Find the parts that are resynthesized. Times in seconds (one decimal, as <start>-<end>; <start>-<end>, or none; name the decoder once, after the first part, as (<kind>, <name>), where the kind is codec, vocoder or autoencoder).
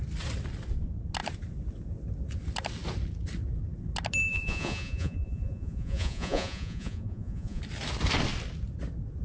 4.3-7.6 (vocoder, Vocos)